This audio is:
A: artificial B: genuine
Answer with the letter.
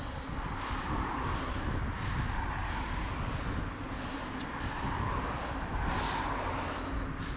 B